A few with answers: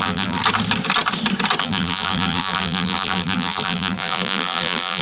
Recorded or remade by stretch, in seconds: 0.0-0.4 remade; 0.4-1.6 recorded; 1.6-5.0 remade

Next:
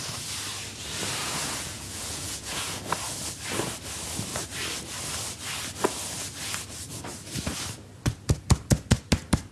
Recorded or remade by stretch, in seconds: 0.0-1.2 recorded; 1.2-2.9 remade; 2.9-9.5 recorded

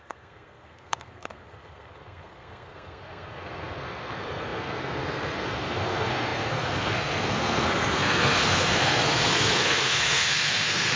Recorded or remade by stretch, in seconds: 0.0-11.0 remade

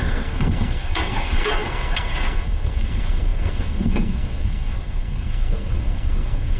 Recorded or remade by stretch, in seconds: 0.0-6.6 remade

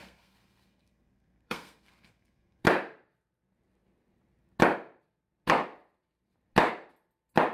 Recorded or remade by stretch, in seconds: 0.0-2.6 remade; 2.6-7.5 recorded

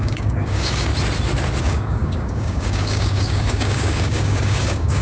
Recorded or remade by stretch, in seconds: 0.0-0.9 remade; 0.9-1.6 recorded; 1.6-5.0 remade

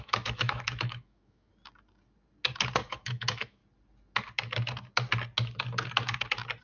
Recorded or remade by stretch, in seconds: 0.0-1.5 remade; 1.5-2.9 recorded; 2.9-3.6 remade; 3.6-6.6 recorded